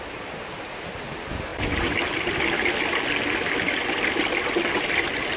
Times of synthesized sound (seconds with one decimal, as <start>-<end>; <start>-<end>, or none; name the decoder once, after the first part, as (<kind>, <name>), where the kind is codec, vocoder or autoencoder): none

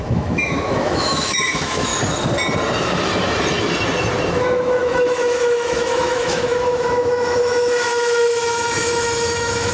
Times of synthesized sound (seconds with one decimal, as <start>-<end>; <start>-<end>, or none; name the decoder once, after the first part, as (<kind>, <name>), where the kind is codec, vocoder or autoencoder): 0.0-1.9 (autoencoder, DAC-VAE); 4.3-9.7

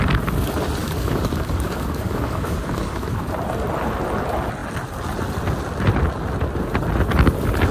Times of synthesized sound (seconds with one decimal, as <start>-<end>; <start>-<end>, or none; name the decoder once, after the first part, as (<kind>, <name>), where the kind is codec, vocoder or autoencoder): 0.8-3.2 (codec, DAC)

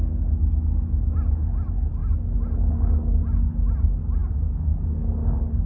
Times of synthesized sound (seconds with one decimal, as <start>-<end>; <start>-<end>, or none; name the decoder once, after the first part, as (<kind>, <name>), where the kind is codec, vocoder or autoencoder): none

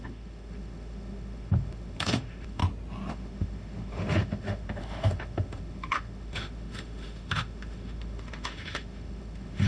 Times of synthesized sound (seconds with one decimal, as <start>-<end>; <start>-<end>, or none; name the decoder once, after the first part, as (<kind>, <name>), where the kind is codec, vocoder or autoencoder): 0.0-2.6 (autoencoder, DAC-VAE); 3.1-9.7

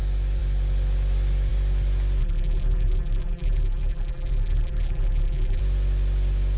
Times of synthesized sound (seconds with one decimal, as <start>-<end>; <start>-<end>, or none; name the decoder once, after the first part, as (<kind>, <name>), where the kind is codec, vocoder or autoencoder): 2.2-5.6 (vocoder, BigVGAN v2)